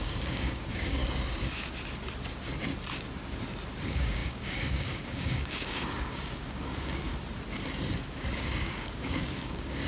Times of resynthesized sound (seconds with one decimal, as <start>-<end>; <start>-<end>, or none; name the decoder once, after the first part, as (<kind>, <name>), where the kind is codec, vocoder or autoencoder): 0.0-1.0 (codec, DAC); 3.8-7.1; 8.1-9.9